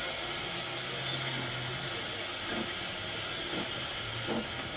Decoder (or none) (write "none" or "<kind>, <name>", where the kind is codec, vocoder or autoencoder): none